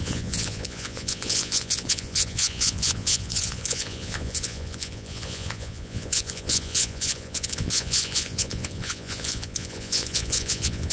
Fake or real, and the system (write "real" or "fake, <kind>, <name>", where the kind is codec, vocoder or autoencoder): fake, vocoder, Vocos